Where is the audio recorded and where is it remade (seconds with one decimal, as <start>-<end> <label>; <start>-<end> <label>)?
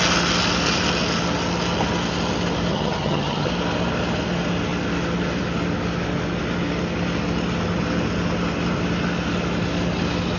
0.0-2.7 recorded; 2.7-3.5 remade; 3.5-10.4 recorded